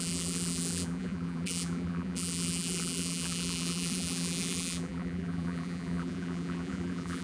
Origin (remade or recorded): remade